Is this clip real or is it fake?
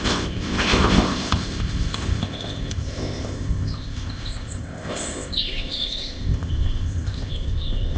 fake